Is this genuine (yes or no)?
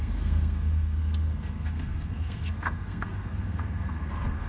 no